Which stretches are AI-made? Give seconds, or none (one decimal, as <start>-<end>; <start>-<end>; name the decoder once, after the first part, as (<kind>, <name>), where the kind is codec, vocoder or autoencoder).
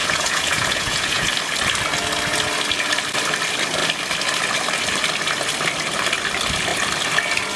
0.0-1.3 (vocoder, Vocos)